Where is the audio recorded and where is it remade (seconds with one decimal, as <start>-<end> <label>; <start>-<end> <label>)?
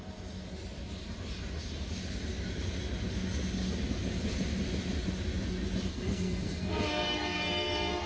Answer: 0.0-5.9 recorded; 5.9-8.1 remade